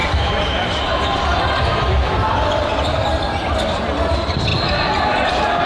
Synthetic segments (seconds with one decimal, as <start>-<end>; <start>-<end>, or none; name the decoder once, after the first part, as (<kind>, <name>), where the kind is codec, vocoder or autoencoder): none